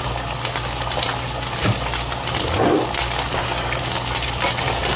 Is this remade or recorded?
recorded